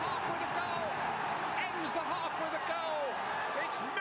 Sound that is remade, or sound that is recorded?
recorded